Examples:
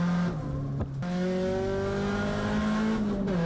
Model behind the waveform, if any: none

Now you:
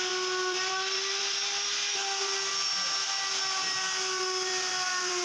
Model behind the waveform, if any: none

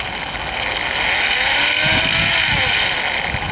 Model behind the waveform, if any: none